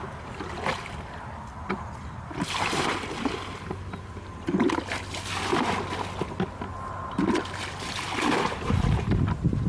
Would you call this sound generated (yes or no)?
no